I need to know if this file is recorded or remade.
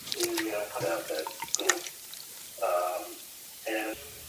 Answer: remade